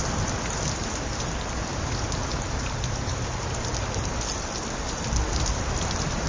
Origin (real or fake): real